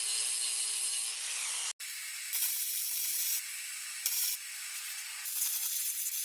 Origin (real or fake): real